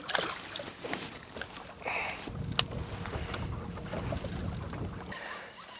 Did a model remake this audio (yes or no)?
no